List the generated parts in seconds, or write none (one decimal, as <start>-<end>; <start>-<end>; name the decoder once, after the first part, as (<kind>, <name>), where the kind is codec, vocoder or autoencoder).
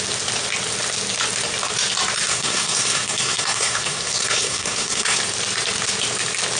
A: 2.3-5.2 (codec, SNAC)